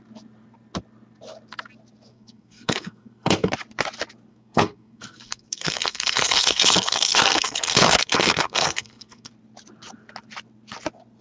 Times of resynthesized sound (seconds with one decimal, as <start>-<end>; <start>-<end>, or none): 2.1-3.5; 4.3-9.3